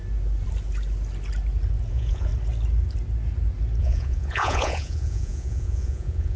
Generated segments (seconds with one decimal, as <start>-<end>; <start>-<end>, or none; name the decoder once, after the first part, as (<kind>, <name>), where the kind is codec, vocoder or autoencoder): 1.9-2.3 (vocoder, Vocos); 3.8-6.4